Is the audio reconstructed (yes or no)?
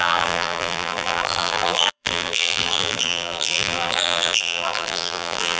yes